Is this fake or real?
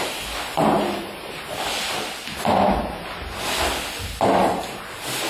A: real